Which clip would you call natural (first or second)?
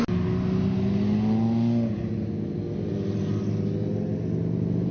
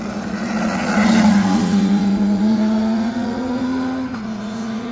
first